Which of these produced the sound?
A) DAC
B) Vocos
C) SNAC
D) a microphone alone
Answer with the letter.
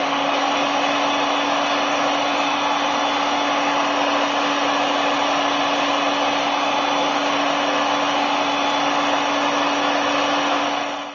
D